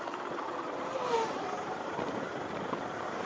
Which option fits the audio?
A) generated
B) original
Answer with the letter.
A